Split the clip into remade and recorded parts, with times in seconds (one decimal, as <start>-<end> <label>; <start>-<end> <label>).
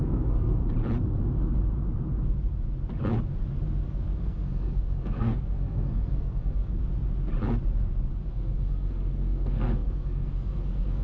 0.0-0.6 remade; 0.6-3.9 recorded; 3.9-6.8 remade; 6.8-8.3 recorded; 8.3-11.0 remade